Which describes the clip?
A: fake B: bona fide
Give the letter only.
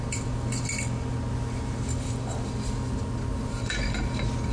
B